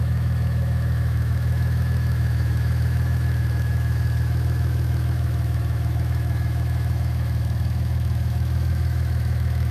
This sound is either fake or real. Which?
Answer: fake